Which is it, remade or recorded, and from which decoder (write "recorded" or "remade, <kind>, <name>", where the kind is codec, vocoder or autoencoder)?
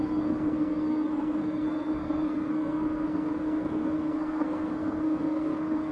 remade, codec, SNAC